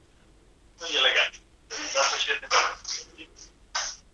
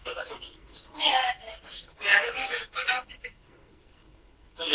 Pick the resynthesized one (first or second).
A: second